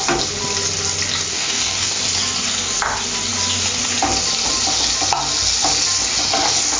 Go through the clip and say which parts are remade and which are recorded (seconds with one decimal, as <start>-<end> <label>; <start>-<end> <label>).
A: 0.0-1.3 recorded; 1.3-2.0 remade; 2.0-6.8 recorded